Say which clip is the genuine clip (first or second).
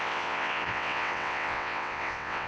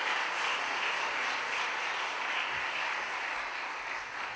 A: second